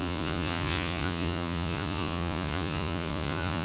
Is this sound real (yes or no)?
no